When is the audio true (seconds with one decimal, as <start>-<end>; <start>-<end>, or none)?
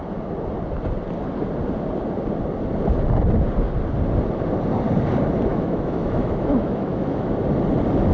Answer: 0.0-5.5; 7.3-8.1